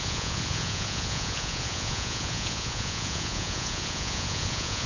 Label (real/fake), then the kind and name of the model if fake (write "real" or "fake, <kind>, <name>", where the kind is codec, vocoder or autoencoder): fake, vocoder, Vocos